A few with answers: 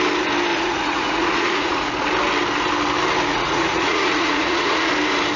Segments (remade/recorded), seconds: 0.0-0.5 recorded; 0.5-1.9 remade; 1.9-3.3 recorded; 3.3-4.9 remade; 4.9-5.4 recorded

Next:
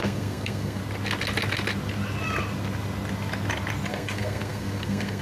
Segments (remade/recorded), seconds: 0.0-0.8 remade; 0.8-3.9 recorded; 3.9-5.2 remade

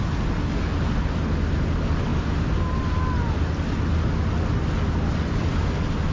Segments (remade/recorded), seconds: 0.0-6.1 recorded

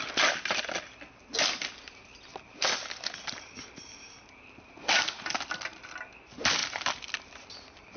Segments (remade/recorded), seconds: 0.0-8.0 recorded

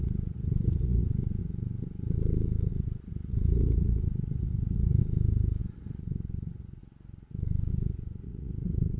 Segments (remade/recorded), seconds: 0.0-1.4 remade; 1.4-2.7 recorded; 2.7-5.0 remade; 5.0-5.6 recorded; 5.6-6.8 remade; 6.8-7.7 recorded; 7.7-9.0 remade

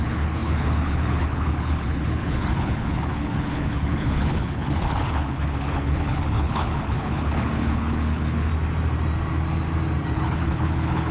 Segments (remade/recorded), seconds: 0.0-8.5 remade; 8.5-10.1 recorded; 10.1-11.1 remade